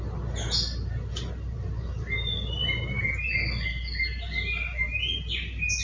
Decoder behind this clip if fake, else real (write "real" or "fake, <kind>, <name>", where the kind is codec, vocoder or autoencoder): real